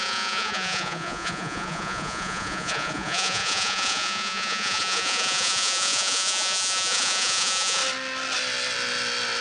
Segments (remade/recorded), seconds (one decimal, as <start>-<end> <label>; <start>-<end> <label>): 0.0-7.8 remade; 7.8-9.4 recorded